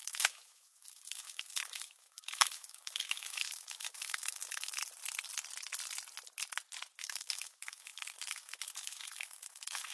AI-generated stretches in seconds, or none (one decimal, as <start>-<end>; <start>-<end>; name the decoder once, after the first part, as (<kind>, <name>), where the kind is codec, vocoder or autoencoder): 0.0-4.8 (autoencoder, DAC-VAE); 7.0-9.9